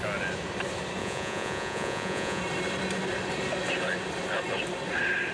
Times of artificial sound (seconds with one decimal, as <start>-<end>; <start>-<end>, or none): 1.0-2.4